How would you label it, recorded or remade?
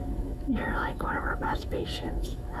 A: remade